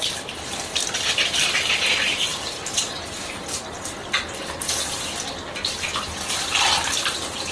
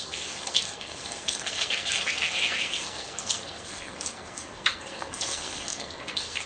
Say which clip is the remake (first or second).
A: second